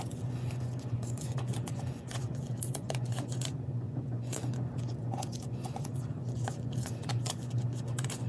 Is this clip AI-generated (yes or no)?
yes